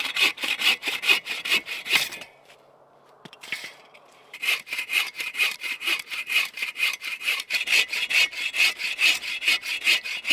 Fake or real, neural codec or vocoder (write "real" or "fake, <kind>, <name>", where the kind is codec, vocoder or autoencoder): fake, vocoder, BigVGAN v2